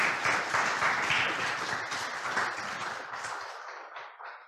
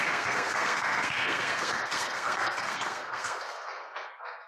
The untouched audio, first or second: first